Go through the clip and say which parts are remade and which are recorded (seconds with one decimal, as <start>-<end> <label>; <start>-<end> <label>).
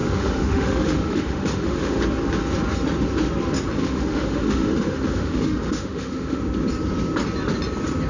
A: 0.0-2.0 remade; 2.0-3.8 recorded; 3.8-6.4 remade; 6.4-8.1 recorded